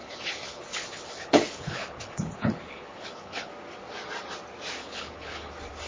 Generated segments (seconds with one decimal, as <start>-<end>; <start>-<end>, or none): 0.0-3.5; 4.8-5.5

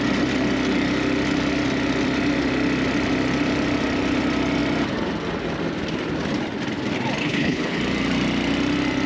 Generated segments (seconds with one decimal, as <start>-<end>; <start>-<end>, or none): 7.2-7.8

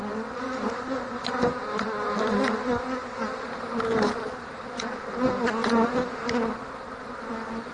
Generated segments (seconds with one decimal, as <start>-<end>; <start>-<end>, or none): none

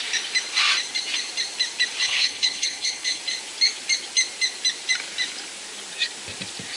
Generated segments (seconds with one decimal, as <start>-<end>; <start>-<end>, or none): 2.0-3.2

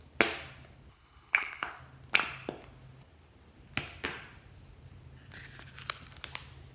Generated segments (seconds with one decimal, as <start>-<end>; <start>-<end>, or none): 0.9-1.8

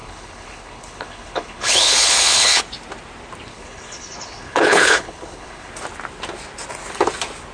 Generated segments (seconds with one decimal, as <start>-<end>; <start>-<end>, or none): 0.0-2.6; 3.5-5.7

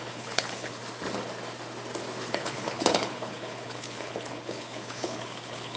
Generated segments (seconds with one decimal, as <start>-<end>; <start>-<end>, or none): 0.0-0.8; 2.2-5.8

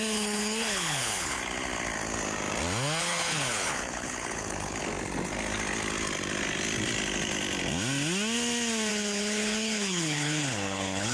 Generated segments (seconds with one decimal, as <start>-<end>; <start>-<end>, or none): 0.0-1.4; 3.0-4.8; 8.9-11.1